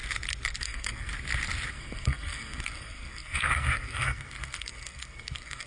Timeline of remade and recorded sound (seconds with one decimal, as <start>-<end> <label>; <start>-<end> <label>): 0.0-0.6 recorded; 0.6-1.1 remade; 1.1-1.7 recorded; 1.7-5.7 remade